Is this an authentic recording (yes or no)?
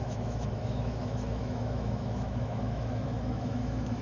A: no